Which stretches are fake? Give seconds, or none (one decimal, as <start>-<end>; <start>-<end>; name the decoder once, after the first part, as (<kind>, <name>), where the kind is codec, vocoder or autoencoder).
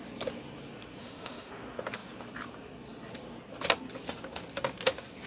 1.0-1.5 (autoencoder, DAC-VAE)